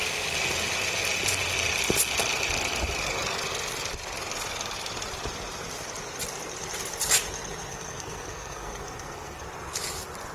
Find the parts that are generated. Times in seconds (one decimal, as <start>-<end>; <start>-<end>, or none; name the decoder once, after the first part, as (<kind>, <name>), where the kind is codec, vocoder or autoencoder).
7.7-9.4 (codec, SNAC)